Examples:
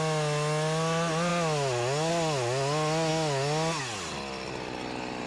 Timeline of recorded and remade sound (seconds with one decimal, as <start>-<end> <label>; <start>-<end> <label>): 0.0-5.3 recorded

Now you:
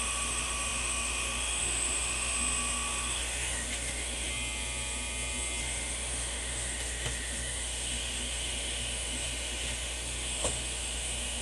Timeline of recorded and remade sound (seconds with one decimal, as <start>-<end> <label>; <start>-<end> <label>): 0.0-4.3 remade; 4.3-5.6 recorded; 5.6-11.4 remade

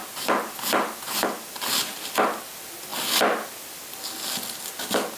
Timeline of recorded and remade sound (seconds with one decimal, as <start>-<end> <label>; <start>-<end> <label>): 0.0-5.2 recorded

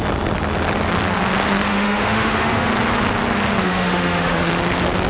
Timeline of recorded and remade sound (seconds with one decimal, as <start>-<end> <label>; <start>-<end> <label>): 0.0-1.7 recorded; 1.7-2.7 remade; 2.7-3.6 recorded; 3.6-4.5 remade; 4.5-5.1 recorded